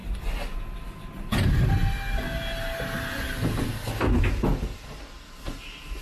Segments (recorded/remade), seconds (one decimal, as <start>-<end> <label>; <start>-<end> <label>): 0.0-6.0 recorded